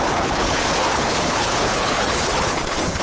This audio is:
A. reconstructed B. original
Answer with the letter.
A